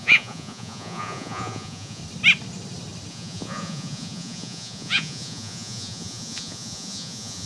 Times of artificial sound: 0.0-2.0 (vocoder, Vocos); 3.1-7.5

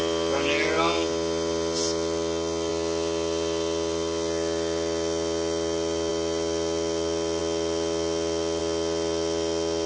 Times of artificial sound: none

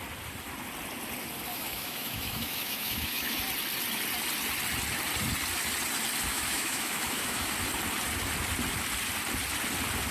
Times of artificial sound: 1.5-3.4 (autoencoder, DAC-VAE); 6.3-7.5

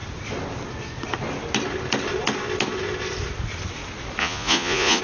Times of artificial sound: 4.2-5.0 (vocoder, Vocos)

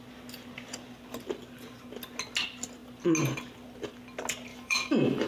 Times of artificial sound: 4.5-5.3 (autoencoder, DAC-VAE)

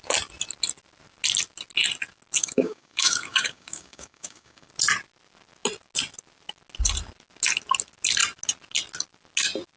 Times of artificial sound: 2.4-4.7 (codec, DAC)

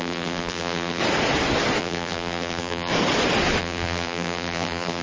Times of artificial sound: 0.0-1.0 (vocoder, BigVGAN v2); 1.8-2.9; 3.6-5.0

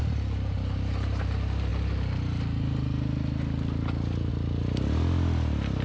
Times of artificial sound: none